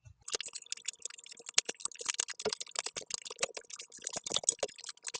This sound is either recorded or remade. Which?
recorded